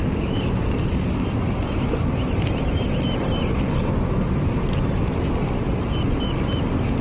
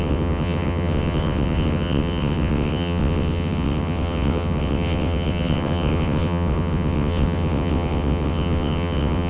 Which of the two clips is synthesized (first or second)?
second